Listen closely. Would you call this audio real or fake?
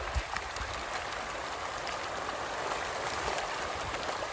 real